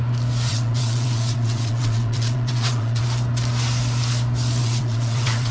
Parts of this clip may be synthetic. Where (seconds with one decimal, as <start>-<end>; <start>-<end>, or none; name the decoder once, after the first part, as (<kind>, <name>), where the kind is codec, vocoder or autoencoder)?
0.5-3.0 (vocoder, WaveNeXt); 4.6-5.5